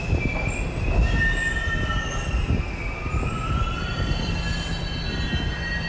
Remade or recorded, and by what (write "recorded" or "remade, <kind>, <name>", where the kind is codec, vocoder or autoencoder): recorded